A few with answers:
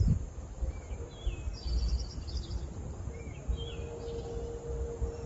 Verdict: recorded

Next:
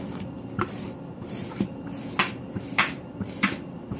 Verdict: recorded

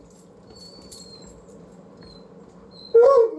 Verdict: recorded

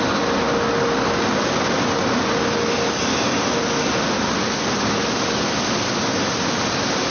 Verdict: recorded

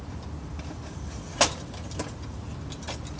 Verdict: recorded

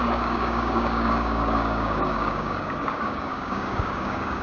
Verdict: remade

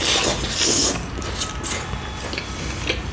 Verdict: recorded